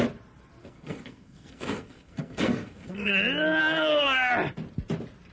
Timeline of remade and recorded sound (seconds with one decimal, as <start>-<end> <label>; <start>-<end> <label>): 0.0-0.6 recorded; 0.6-3.1 remade; 3.1-3.6 recorded; 3.6-4.3 remade; 4.3-5.3 recorded